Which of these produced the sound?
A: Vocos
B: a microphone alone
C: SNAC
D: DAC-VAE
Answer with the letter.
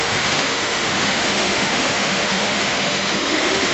D